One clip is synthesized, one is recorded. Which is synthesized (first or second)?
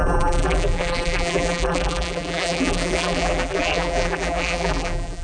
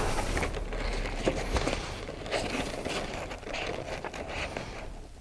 first